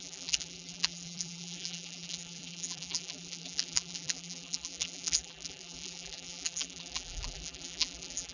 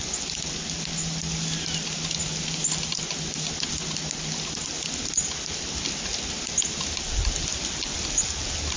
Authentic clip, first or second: second